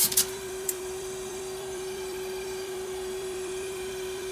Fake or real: fake